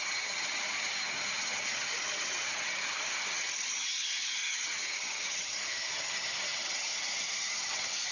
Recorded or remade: remade